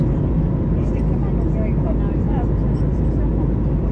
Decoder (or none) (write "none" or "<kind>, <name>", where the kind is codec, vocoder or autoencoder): none